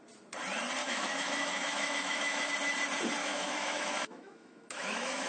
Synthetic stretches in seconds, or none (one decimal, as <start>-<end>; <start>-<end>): 0.8-2.5; 3.2-5.3